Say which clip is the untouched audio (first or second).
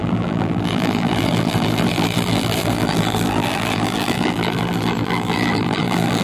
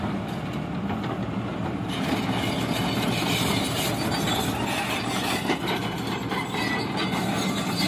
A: second